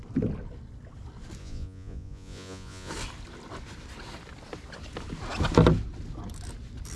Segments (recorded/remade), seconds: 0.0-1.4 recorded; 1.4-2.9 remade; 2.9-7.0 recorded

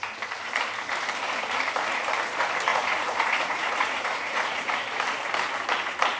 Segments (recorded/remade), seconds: 0.0-2.7 recorded; 2.7-4.7 remade; 4.7-6.2 recorded

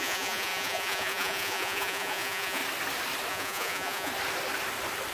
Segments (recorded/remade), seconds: 0.0-2.6 remade; 2.6-3.3 recorded; 3.3-4.1 remade; 4.1-5.1 recorded

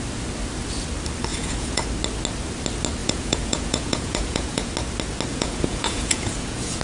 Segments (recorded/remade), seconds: 0.0-1.3 recorded; 1.3-1.8 remade; 1.8-3.0 recorded; 3.0-4.7 remade; 4.7-5.3 recorded; 5.3-6.8 remade